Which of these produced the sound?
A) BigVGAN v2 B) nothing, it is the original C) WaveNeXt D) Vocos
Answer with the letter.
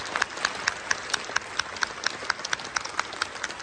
B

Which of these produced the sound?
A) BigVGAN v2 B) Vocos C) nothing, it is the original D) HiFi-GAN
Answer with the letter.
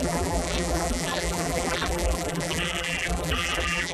A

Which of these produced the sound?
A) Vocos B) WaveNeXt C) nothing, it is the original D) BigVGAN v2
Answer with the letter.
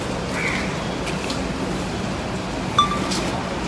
C